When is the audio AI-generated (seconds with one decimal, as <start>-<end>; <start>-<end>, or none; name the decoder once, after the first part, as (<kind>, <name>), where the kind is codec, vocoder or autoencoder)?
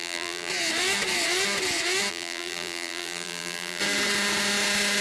0.0-0.5 (vocoder, BigVGAN v2); 2.1-3.8